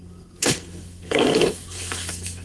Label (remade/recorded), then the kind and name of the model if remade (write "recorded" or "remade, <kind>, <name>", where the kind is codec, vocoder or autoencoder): remade, codec, SNAC